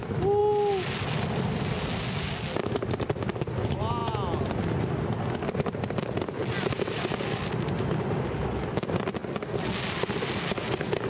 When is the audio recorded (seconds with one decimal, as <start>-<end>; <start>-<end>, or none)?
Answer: 0.0-11.1